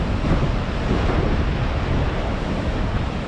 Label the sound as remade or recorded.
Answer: recorded